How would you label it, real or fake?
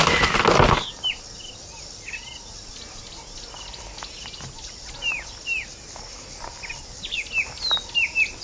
real